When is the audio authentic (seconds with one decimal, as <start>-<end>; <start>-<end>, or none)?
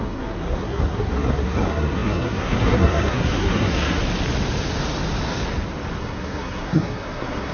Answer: 4.0-6.0